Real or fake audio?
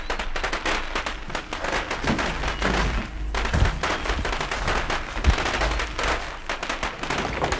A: real